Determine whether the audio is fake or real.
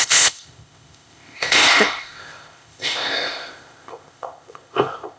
fake